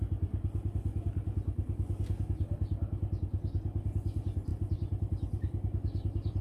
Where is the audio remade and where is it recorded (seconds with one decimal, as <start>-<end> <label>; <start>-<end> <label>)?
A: 0.0-4.5 recorded; 4.5-6.4 remade